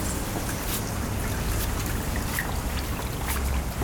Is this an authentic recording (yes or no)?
yes